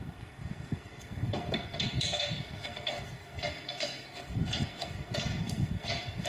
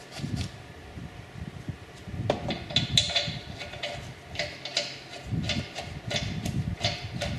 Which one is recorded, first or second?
second